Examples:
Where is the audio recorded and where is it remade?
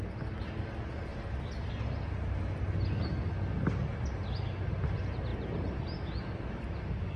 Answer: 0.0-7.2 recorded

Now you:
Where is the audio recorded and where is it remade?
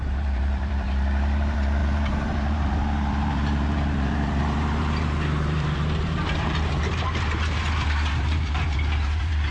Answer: 0.0-9.5 remade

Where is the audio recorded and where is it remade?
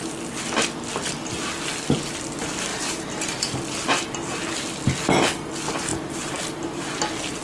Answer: 0.0-2.7 recorded; 2.7-3.4 remade; 3.4-5.9 recorded; 5.9-7.0 remade; 7.0-7.4 recorded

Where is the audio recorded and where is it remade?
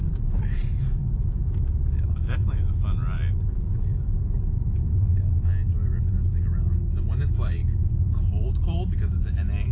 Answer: 0.0-7.6 recorded; 7.6-9.7 remade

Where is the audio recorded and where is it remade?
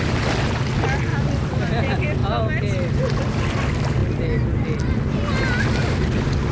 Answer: 0.0-1.1 recorded; 1.1-1.7 remade; 1.7-6.5 recorded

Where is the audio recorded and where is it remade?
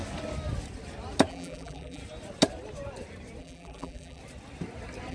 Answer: 0.0-1.3 recorded; 1.3-2.0 remade; 2.0-3.4 recorded; 3.4-4.2 remade; 4.2-5.1 recorded